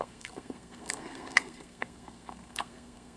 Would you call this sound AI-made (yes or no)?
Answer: yes